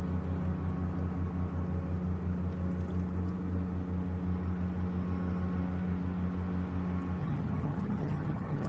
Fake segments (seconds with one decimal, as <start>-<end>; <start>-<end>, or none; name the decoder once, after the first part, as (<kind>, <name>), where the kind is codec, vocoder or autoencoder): 7.2-8.7 (vocoder, HiFi-GAN)